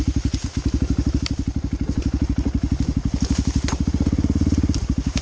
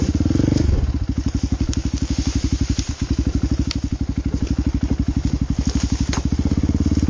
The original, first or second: second